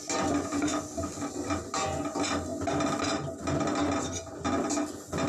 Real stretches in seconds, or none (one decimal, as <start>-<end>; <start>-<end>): 0.0-0.7; 1.3-5.3